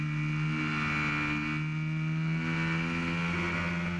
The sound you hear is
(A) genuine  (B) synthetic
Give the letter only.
A